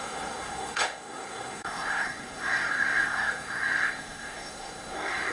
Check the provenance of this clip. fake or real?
fake